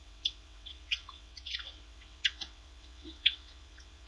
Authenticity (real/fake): fake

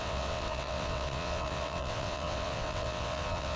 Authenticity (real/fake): fake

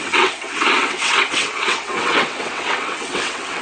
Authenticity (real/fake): fake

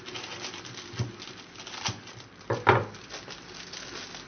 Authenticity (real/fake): real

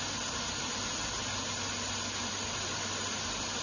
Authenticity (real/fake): real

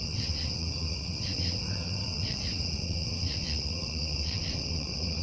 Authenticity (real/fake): fake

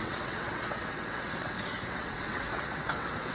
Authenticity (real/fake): fake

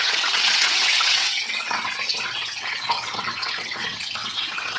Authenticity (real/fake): fake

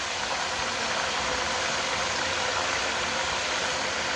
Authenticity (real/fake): real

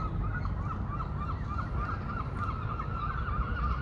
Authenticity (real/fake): real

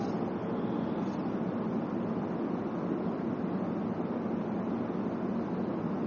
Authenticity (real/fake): real